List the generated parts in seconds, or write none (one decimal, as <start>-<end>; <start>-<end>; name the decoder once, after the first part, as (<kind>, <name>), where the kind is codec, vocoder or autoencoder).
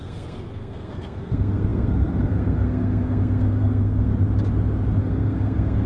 0.0-4.1 (codec, SNAC); 5.0-5.9